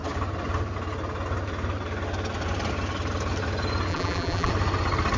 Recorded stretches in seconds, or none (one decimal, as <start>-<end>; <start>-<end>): 0.0-3.9; 4.5-5.2